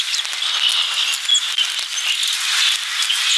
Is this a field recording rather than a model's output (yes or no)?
yes